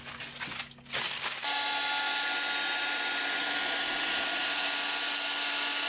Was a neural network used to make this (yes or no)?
no